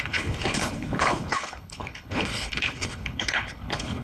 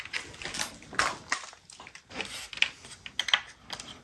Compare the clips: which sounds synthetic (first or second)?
first